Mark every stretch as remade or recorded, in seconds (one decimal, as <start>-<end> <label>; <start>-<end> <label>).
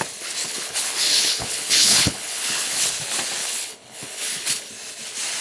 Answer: 0.0-0.4 recorded; 0.4-2.9 remade; 2.9-3.4 recorded; 3.4-4.7 remade; 4.7-5.4 recorded